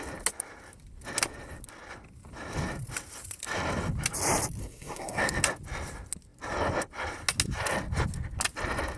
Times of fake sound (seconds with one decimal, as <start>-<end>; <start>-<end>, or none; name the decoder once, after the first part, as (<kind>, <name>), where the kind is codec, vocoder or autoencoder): 4.6-5.2 (codec, SNAC)